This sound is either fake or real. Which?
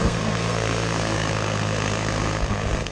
fake